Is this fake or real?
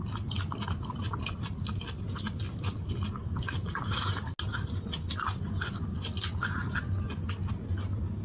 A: real